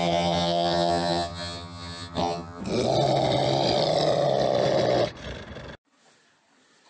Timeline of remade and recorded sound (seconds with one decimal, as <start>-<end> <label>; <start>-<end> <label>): 0.0-2.6 remade; 2.6-6.9 recorded